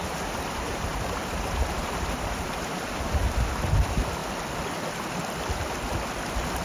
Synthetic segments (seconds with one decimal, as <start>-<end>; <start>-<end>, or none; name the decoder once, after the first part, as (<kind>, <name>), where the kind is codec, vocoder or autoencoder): 0.0-3.2 (vocoder, BigVGAN v2)